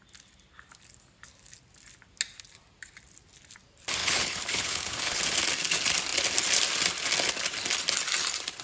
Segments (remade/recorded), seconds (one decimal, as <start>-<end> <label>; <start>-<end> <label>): 0.0-4.0 recorded; 4.0-5.2 remade; 5.2-8.6 recorded

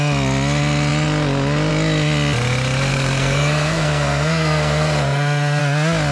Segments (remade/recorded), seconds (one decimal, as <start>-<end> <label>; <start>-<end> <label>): 0.0-2.9 recorded; 2.9-5.6 remade; 5.6-6.1 recorded

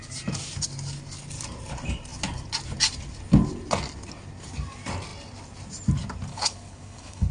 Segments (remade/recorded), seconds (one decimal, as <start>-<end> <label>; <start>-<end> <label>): 0.0-6.3 recorded; 6.3-7.3 remade

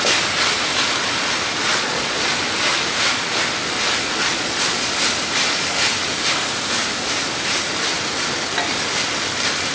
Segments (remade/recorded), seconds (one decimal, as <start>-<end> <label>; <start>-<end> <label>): 0.0-1.6 recorded; 1.6-2.3 remade; 2.3-4.2 recorded; 4.2-4.9 remade; 4.9-9.7 recorded

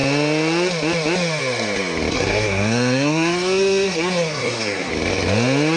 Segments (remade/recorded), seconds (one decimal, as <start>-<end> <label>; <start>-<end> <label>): 0.0-2.1 recorded; 2.1-4.9 remade; 4.9-5.8 recorded